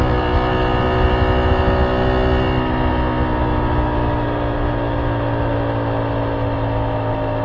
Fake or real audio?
real